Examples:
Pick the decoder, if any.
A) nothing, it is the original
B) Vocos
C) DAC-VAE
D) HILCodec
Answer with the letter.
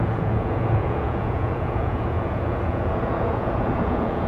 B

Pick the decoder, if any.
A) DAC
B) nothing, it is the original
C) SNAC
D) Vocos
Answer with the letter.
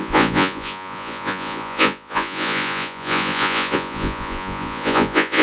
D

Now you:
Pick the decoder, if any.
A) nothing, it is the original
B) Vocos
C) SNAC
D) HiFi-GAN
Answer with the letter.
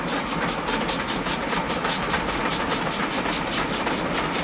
A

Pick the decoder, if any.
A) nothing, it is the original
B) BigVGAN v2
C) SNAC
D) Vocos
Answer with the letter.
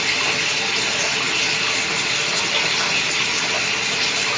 A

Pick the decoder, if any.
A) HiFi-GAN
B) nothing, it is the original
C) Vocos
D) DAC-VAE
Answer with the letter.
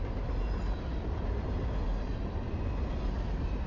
B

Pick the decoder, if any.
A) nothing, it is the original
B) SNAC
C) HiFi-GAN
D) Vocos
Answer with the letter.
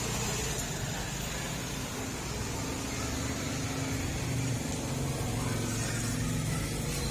A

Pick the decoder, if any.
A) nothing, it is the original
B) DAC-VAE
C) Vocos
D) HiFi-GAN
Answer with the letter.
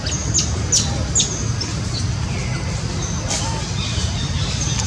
A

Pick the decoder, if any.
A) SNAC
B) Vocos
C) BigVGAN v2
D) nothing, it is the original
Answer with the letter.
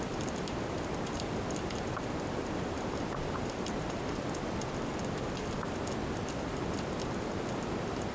D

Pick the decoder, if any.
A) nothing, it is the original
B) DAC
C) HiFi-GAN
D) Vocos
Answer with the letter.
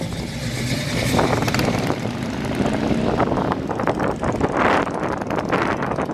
A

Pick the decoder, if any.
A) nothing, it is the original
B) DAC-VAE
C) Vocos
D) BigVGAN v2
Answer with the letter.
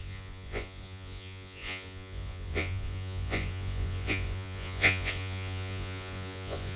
C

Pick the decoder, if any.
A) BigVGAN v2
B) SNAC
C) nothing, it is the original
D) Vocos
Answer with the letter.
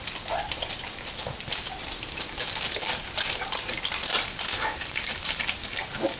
C